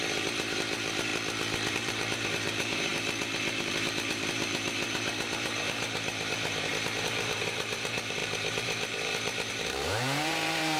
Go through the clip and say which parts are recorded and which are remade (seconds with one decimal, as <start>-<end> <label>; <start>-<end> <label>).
0.0-1.1 remade; 1.1-1.7 recorded; 1.7-10.8 remade